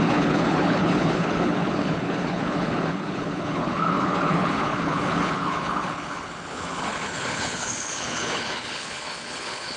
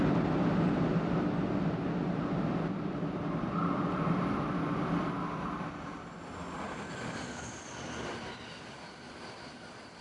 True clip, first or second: second